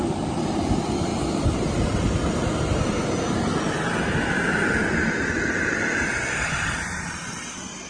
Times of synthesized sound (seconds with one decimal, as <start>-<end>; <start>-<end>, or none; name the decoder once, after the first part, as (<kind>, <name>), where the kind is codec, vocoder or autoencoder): 4.8-7.4 (vocoder, BigVGAN v2)